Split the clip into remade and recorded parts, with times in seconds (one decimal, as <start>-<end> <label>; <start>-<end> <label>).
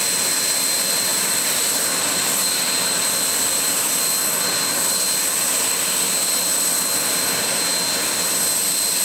0.0-1.1 recorded; 1.1-1.8 remade; 1.8-9.0 recorded